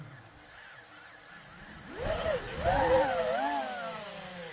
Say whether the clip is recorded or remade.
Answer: recorded